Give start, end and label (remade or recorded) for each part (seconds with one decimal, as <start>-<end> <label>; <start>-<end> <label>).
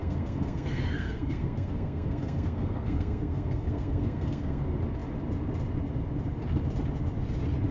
0.0-4.6 remade; 4.6-7.7 recorded